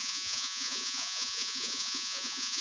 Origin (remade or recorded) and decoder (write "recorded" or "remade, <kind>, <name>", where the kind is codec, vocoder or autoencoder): remade, vocoder, Vocos